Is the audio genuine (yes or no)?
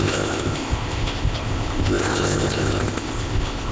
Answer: no